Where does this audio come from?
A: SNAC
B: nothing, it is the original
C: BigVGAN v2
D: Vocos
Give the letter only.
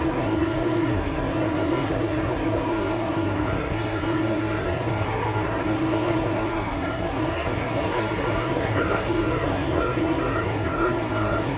A